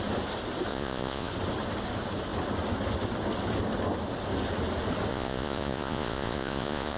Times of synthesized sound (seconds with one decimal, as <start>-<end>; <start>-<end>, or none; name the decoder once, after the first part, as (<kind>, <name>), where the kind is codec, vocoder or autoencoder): 0.7-1.3 (vocoder, Vocos); 5.1-7.0